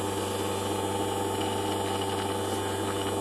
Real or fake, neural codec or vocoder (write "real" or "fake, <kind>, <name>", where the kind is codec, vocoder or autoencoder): real